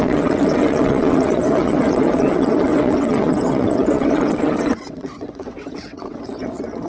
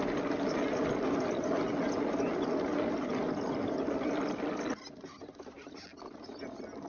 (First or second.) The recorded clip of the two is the second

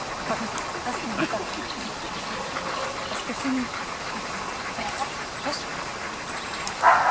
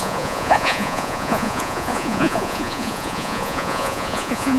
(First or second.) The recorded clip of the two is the first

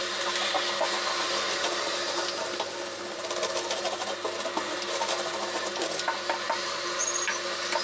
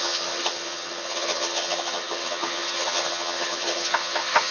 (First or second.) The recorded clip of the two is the first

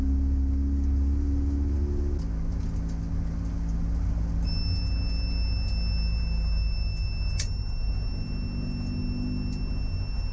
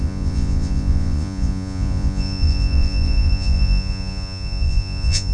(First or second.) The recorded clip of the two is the first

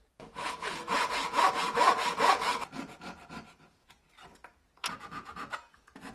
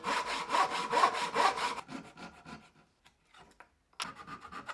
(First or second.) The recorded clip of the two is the second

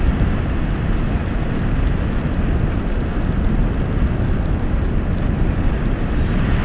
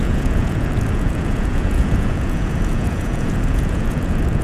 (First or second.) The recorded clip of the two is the first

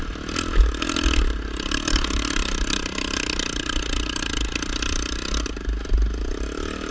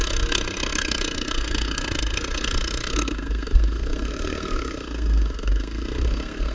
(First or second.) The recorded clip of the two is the first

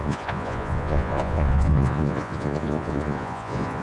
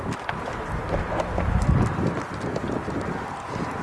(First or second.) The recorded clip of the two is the second